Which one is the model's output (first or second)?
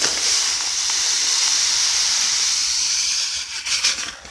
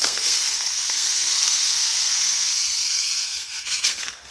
second